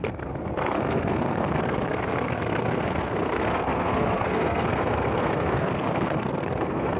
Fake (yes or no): yes